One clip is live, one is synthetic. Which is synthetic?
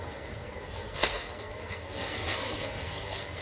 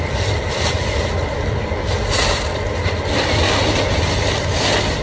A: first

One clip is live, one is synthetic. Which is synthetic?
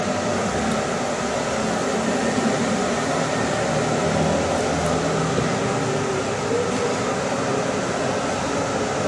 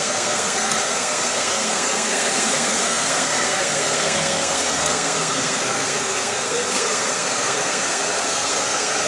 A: second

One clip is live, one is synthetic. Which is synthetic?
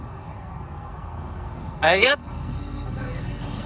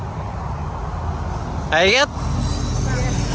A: first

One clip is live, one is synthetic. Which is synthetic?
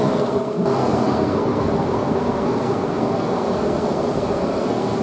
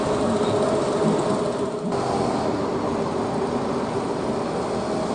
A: first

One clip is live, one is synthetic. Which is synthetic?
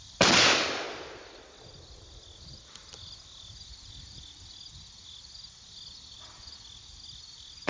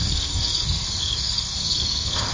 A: second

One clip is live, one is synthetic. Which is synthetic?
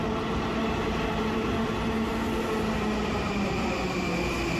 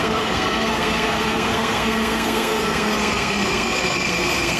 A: second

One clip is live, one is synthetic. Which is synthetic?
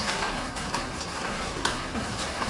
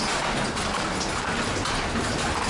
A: first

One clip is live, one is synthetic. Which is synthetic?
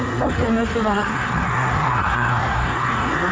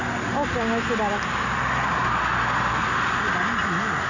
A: first